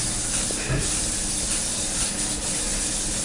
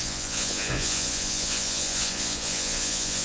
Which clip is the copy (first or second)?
second